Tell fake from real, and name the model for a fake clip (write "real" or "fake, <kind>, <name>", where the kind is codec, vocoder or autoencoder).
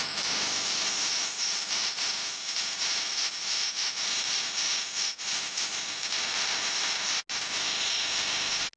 real